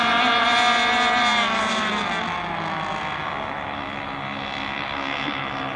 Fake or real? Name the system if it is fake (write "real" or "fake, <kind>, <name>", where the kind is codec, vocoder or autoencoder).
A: real